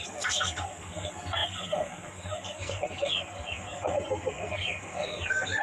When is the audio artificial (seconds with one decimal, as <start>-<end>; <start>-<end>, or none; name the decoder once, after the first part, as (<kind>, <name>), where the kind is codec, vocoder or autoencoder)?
0.0-5.6 (codec, SNAC)